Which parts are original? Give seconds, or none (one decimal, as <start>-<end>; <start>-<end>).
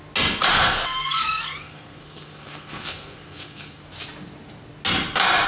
0.0-0.5; 3.8-5.5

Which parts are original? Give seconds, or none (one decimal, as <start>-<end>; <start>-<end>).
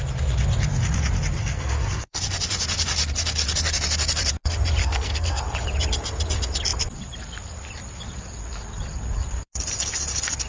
0.0-1.4; 2.2-4.8; 5.4-10.5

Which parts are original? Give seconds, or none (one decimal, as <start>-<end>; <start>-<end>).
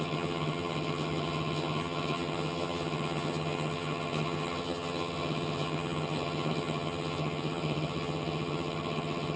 none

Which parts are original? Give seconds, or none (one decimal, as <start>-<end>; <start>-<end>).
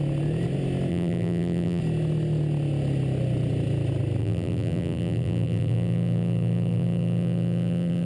0.0-0.9; 1.8-4.2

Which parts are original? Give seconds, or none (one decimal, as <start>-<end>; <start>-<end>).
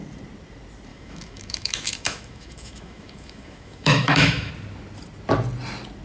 0.0-0.9; 4.5-6.0